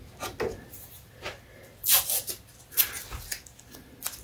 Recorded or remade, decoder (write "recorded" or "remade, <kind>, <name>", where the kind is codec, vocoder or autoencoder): recorded